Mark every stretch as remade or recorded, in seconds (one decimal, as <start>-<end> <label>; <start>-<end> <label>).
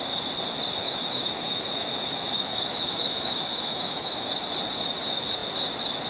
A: 0.0-0.8 recorded; 0.8-4.3 remade; 4.3-6.1 recorded